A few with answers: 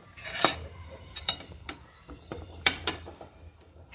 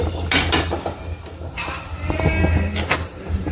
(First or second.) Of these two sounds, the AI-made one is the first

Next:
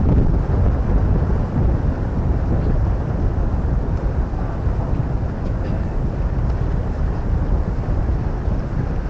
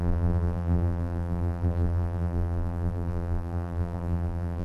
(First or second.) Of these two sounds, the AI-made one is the second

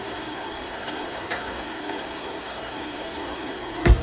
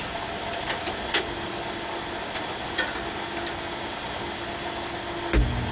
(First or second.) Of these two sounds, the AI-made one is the first